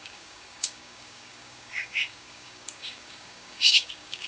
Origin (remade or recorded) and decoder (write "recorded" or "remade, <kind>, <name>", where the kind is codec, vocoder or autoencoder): remade, codec, DAC